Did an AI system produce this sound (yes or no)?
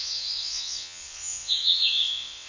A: yes